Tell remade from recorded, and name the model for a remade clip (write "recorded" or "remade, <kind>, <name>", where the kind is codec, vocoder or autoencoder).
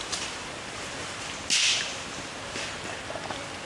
recorded